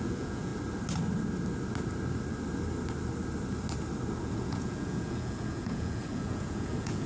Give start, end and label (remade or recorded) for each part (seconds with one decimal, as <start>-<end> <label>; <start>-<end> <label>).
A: 0.0-0.5 remade; 0.5-4.2 recorded; 4.2-7.1 remade